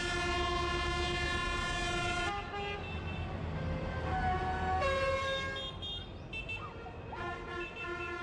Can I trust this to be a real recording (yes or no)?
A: yes